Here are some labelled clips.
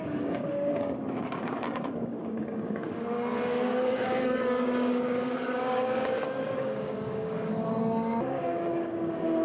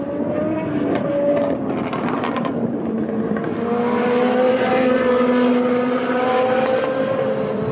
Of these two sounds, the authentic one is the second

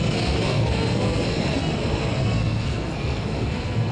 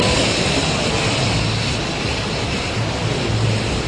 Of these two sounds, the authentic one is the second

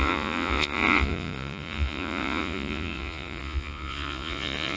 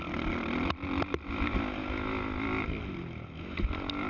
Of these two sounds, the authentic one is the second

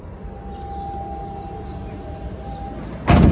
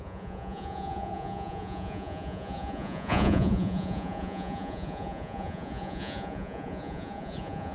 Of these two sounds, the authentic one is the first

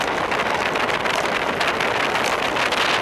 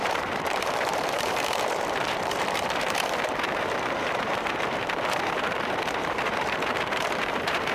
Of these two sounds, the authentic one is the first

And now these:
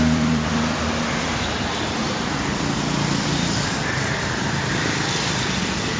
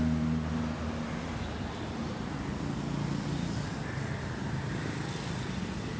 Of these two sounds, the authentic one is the second